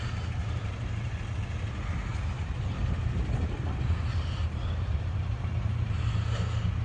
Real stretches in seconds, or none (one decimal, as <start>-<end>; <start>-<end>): 0.0-0.4; 1.1-2.1; 2.8-3.4; 6.0-6.8